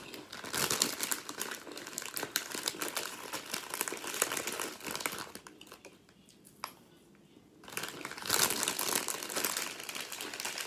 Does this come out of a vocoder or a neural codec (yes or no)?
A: no